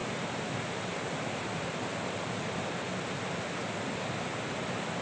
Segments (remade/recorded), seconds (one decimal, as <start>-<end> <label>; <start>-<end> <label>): 0.0-0.5 remade; 0.5-0.9 recorded; 0.9-1.5 remade; 1.5-5.0 recorded